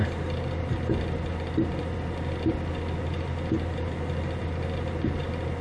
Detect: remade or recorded recorded